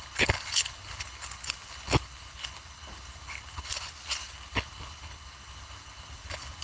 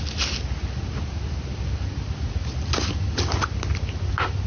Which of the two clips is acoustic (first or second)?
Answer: second